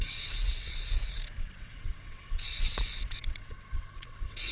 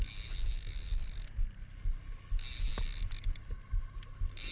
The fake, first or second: first